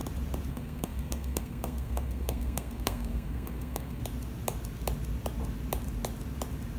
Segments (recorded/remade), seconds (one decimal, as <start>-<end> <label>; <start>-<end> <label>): 0.0-0.5 recorded; 0.5-4.0 remade; 4.0-6.8 recorded